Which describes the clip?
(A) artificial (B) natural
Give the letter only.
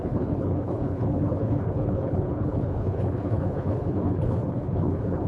A